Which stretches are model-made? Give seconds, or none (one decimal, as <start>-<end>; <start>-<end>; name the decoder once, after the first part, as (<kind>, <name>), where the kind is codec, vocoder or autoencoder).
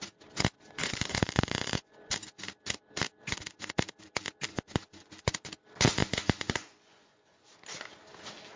0.8-2.1 (vocoder, Vocos); 4.5-5.2; 6.0-7.4